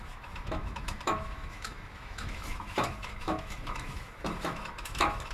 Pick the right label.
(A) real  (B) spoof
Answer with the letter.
B